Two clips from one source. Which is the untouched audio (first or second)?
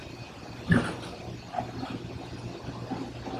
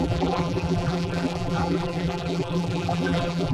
first